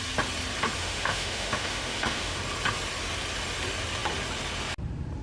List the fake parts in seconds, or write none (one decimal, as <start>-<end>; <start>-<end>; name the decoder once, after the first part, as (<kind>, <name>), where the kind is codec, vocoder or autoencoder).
0.8-2.4 (autoencoder, DAC-VAE)